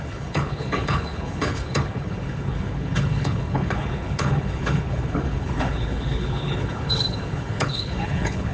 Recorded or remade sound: remade